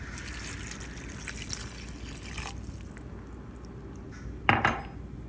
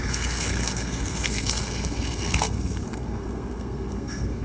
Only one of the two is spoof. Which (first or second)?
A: second